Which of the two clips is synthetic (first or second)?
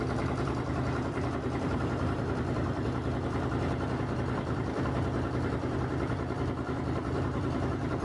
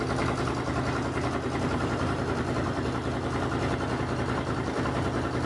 first